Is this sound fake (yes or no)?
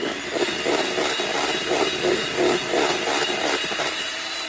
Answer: no